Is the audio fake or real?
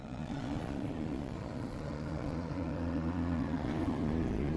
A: fake